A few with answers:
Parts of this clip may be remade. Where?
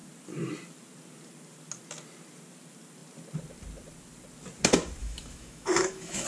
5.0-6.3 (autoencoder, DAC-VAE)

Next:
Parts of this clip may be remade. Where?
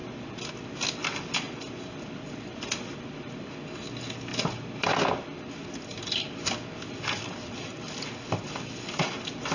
none